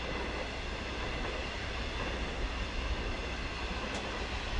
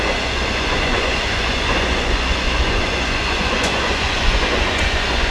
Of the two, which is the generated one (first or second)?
second